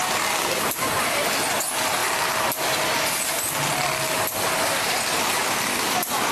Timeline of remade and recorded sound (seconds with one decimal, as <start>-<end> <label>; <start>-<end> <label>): 0.0-6.3 recorded